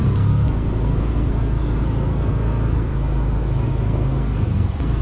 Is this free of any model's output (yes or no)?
no